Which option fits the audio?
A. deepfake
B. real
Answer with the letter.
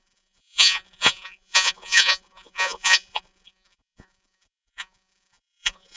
A